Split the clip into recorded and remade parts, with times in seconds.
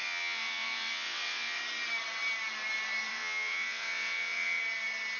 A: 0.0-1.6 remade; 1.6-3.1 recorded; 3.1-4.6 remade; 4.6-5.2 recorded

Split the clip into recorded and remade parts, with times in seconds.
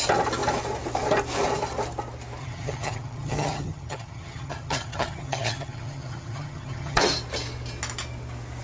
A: 0.0-2.4 recorded; 2.4-7.0 remade; 7.0-8.6 recorded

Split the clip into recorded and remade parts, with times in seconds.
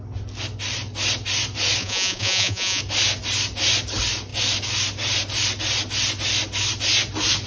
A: 0.0-1.8 recorded; 1.8-2.8 remade; 2.8-7.5 recorded